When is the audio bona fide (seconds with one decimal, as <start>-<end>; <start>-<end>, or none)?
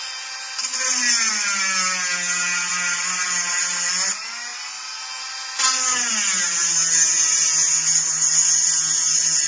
0.0-9.5